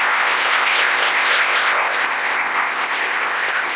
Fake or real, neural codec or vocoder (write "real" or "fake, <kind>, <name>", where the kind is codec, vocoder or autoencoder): fake, codec, ZipCodec